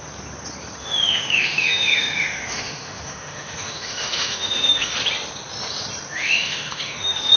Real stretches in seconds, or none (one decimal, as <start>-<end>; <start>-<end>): 0.0-0.8; 4.9-6.1